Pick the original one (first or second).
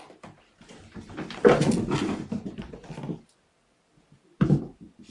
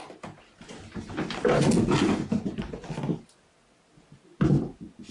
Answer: second